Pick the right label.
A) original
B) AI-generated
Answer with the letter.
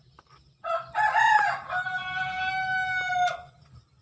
A